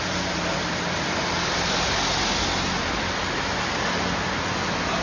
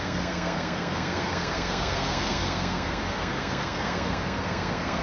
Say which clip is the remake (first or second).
second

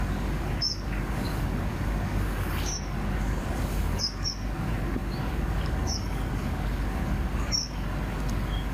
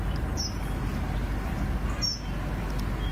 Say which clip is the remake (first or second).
first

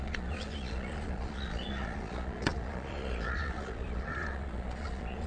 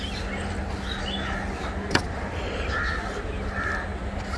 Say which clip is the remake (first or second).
first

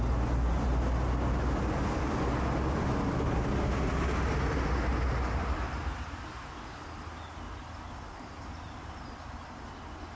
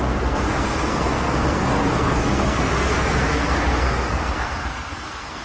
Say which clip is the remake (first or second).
second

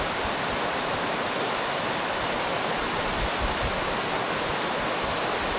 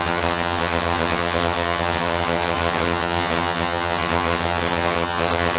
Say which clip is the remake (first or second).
second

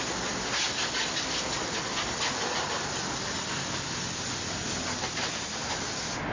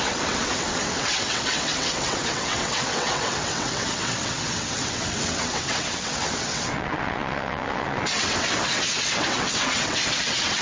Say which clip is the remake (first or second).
second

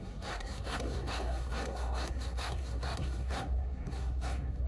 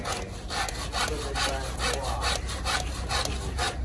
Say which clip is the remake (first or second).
first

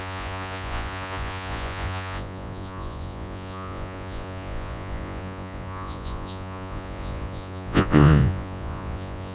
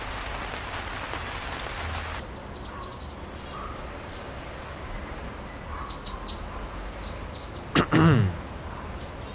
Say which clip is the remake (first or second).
first